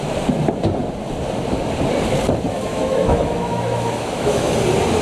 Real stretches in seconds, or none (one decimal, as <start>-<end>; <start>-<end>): 0.0-2.7; 4.5-5.0